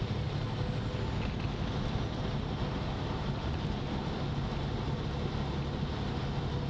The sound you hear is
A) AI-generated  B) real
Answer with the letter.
B